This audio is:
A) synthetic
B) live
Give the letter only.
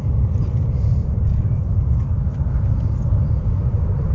B